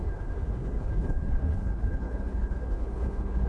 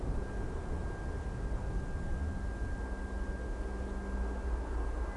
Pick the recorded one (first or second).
second